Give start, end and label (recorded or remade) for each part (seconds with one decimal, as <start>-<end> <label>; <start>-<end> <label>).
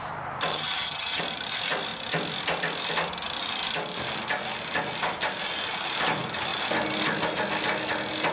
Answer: 0.0-0.5 recorded; 0.5-1.2 remade; 1.2-8.3 recorded